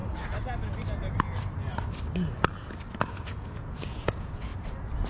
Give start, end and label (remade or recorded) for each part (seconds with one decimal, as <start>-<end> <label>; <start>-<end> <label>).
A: 0.0-3.1 recorded; 3.1-4.5 remade; 4.5-5.1 recorded